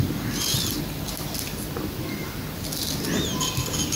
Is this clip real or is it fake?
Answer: real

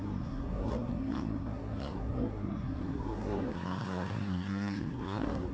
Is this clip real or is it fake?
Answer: fake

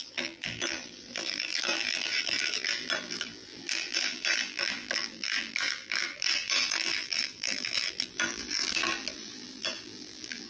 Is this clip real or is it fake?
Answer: fake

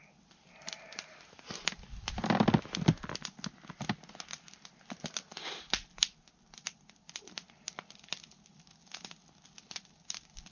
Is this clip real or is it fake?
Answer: real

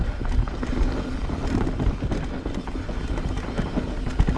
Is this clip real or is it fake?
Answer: real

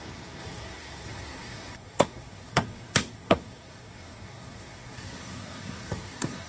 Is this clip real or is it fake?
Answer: fake